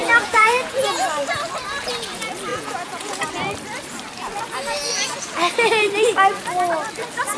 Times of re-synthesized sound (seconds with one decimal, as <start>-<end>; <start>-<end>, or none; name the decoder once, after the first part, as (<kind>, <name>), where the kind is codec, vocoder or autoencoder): 0.0-0.8 (vocoder, Vocos); 2.5-3.3